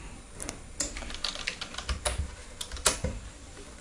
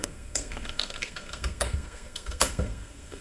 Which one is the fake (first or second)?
second